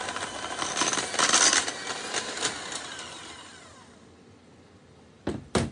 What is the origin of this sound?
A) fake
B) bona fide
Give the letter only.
B